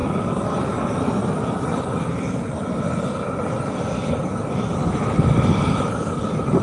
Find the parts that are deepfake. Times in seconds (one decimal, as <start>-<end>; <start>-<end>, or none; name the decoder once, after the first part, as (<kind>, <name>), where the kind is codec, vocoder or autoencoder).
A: none